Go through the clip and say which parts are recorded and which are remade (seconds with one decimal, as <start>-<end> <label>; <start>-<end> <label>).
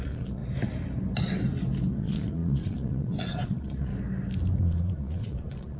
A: 0.0-0.4 remade; 0.4-1.9 recorded; 1.9-3.9 remade; 3.9-4.6 recorded; 4.6-5.8 remade